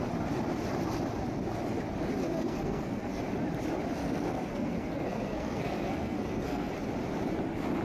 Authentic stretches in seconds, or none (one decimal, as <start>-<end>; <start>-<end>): 0.0-2.3; 3.2-4.0; 6.7-7.8